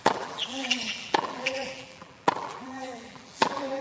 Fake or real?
fake